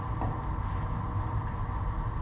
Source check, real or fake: real